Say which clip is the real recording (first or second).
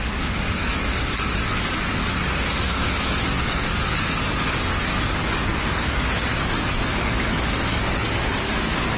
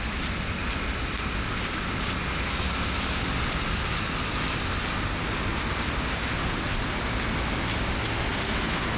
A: second